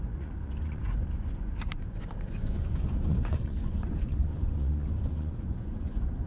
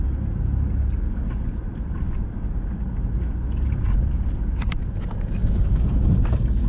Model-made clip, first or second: first